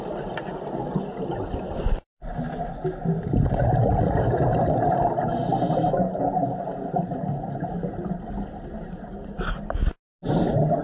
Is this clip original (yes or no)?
yes